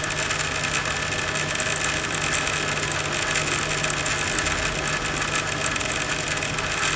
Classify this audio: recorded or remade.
recorded